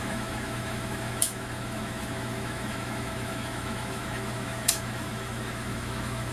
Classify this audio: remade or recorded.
remade